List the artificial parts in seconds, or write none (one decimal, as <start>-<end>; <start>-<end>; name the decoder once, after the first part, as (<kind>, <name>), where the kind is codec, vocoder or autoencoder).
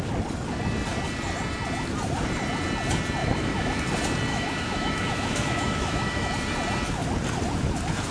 3.2-3.8 (autoencoder, DAC-VAE); 4.3-6.3